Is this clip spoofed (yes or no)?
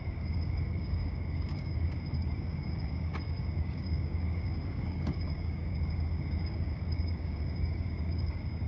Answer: yes